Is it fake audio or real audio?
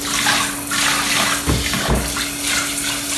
real